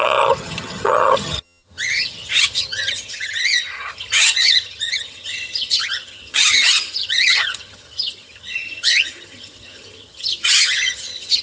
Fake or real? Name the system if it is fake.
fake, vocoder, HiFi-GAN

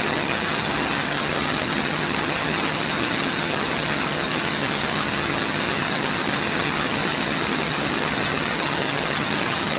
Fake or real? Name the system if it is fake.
fake, vocoder, HiFi-GAN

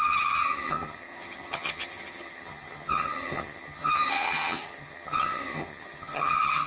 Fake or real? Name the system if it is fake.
fake, vocoder, HiFi-GAN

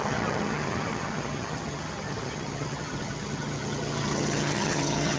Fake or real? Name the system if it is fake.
fake, vocoder, HiFi-GAN